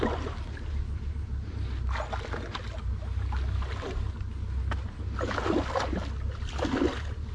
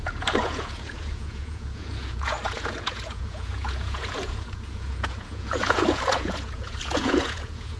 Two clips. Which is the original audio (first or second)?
first